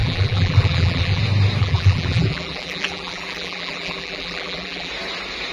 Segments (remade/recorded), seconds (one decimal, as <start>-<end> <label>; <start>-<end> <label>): 0.0-1.2 remade; 1.2-1.6 recorded; 1.6-4.9 remade; 4.9-5.5 recorded